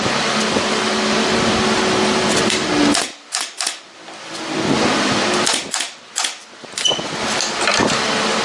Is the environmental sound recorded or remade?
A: recorded